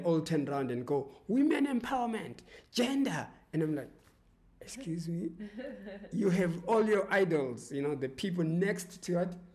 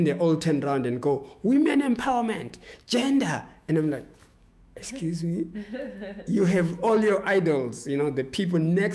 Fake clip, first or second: second